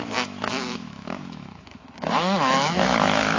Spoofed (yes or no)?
yes